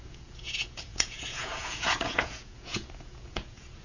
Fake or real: fake